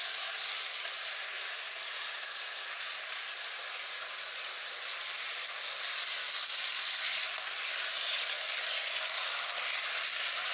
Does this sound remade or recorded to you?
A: recorded